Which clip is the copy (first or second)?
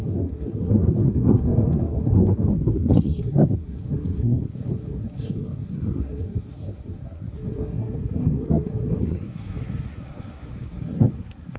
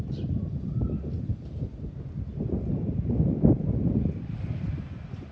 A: first